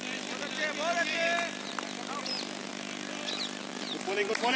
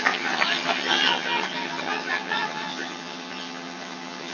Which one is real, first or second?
first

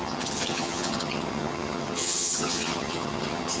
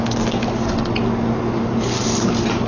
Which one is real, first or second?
second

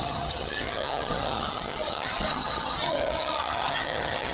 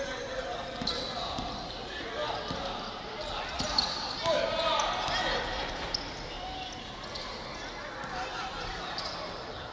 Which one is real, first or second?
second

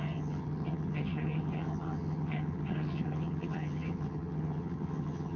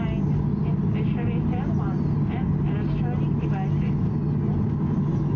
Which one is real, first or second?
second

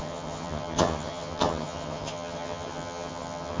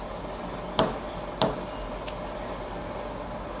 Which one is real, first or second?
second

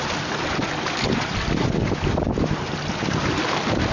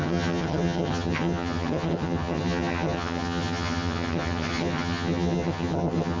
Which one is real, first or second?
first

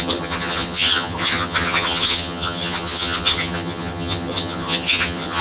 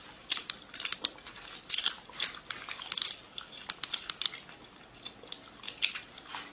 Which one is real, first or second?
second